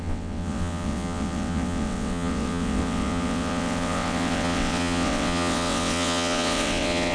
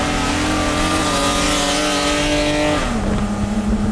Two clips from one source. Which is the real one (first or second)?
second